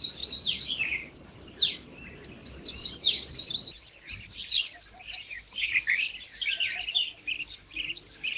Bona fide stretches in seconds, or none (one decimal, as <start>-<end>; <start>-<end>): 4.4-5.4